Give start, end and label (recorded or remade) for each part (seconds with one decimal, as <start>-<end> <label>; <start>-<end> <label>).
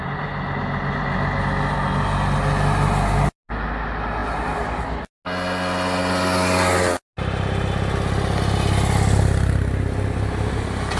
0.0-11.0 recorded